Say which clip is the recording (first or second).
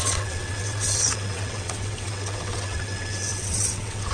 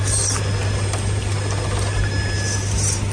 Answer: second